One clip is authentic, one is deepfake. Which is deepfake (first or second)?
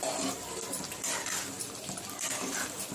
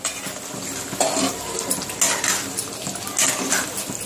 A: first